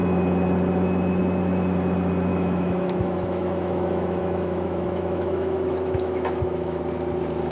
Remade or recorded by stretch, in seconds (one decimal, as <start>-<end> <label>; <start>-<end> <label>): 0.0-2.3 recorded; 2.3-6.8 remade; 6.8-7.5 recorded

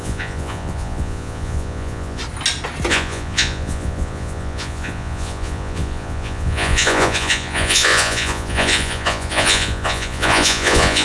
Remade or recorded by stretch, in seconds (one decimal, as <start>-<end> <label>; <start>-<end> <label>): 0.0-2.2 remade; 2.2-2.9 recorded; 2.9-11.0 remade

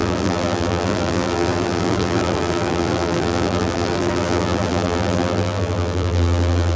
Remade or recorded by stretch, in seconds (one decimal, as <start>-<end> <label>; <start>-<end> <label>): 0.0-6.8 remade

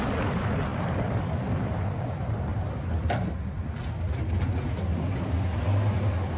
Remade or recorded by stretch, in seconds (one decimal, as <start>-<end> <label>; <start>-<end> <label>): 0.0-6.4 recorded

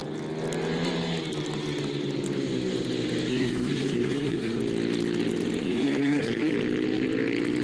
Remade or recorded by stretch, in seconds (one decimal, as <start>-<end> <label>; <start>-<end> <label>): 0.0-3.3 recorded; 3.3-4.6 remade; 4.6-5.6 recorded; 5.6-6.5 remade; 6.5-7.6 recorded